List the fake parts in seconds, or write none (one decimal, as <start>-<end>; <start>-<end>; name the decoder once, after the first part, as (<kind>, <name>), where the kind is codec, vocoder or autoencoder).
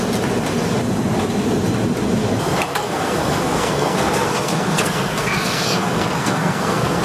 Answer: 2.7-7.0 (codec, SNAC)